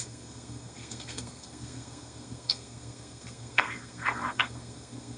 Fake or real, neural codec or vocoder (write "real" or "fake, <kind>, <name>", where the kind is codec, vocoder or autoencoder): fake, codec, SNAC